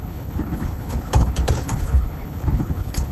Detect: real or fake fake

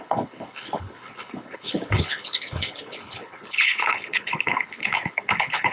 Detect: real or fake fake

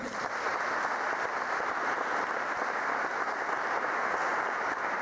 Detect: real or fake real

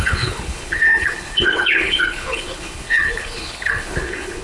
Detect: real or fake fake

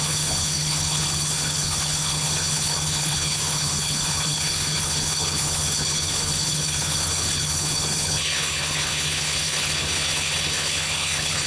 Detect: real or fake fake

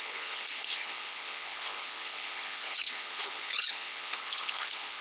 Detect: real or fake fake